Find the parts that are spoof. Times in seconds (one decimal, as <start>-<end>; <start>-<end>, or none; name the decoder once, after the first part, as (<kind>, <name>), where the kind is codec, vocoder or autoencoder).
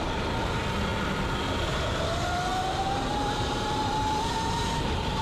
2.5-5.2 (vocoder, BigVGAN v2)